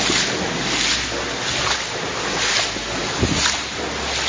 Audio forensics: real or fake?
real